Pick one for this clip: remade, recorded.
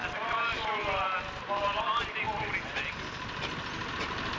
recorded